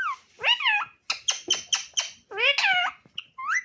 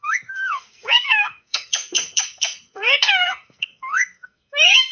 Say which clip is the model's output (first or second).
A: second